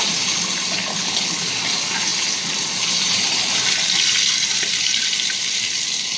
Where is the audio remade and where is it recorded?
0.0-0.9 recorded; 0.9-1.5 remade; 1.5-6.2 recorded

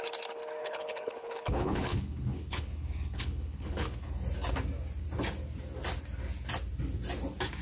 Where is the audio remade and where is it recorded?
0.0-0.6 recorded; 0.6-4.1 remade; 4.1-7.6 recorded